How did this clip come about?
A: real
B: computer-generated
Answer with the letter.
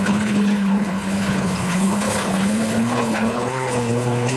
B